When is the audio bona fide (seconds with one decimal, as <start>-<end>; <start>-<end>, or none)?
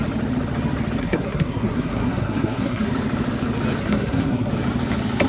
0.0-1.0; 2.9-3.8; 4.5-5.3